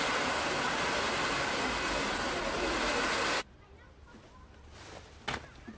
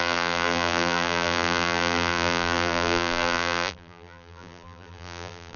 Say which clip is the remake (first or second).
second